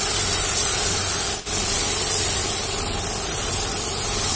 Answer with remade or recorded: recorded